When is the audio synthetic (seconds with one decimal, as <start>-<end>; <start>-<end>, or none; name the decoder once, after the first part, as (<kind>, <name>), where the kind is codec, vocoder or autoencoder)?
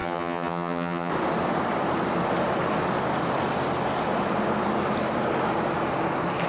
0.0-1.1 (vocoder, HiFi-GAN)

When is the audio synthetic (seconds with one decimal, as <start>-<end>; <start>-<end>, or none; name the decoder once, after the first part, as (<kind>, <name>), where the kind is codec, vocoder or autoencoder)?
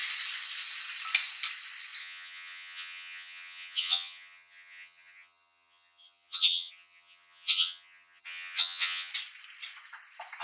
2.0-9.1 (vocoder, HiFi-GAN)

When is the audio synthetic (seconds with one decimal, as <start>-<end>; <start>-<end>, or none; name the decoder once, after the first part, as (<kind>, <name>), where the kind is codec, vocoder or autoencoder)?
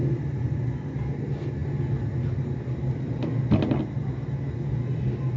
none